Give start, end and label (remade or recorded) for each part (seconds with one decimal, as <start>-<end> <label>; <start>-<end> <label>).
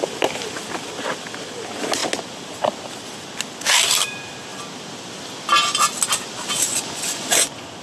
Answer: 0.0-6.7 recorded; 6.7-7.8 remade